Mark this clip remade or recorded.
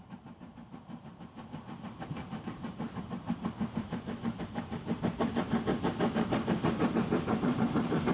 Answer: remade